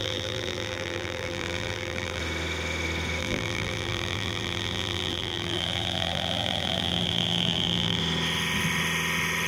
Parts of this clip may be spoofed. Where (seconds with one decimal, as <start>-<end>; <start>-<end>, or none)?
0.0-2.2; 3.2-8.0